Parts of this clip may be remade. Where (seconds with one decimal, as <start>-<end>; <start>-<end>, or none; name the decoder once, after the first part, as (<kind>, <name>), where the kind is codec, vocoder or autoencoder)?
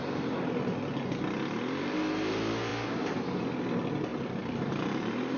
0.0-0.8 (vocoder, BigVGAN v2); 2.7-3.4; 4.1-5.4